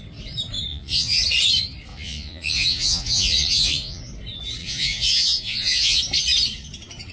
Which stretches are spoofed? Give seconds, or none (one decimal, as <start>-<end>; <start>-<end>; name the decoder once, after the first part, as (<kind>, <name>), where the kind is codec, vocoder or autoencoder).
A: 0.7-1.2 (vocoder, Vocos); 1.9-4.0; 4.6-6.0